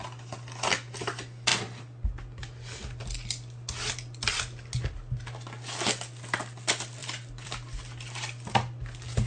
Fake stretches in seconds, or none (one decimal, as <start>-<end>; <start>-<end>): 1.5-2.4; 7.0-7.8